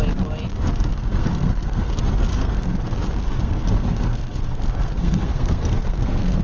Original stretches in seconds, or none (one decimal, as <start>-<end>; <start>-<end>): 0.0-0.9; 1.9-2.3; 2.8-3.2

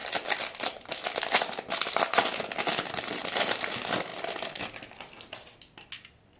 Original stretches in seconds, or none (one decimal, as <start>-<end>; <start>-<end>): 0.0-6.4

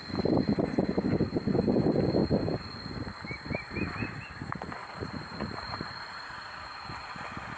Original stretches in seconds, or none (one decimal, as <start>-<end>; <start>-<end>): 0.0-4.8; 6.6-7.6

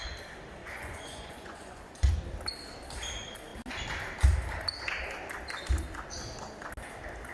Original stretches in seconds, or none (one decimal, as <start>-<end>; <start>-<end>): 0.0-0.6; 2.0-7.3

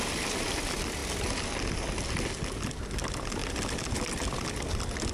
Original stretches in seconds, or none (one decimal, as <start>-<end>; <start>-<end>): 0.0-5.1